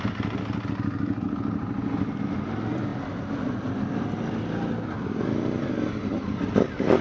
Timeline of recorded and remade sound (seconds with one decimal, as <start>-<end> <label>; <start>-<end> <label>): 0.0-7.0 recorded